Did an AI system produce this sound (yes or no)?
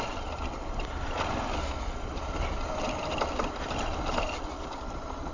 no